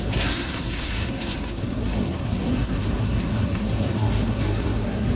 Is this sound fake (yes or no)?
yes